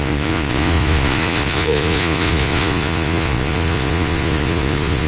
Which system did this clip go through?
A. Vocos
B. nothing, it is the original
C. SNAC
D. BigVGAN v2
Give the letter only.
A